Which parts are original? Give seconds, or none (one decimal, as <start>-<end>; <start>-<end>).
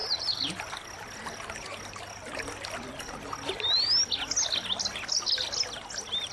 0.6-6.3